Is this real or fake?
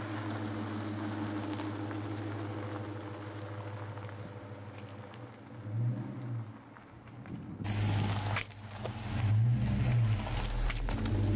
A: real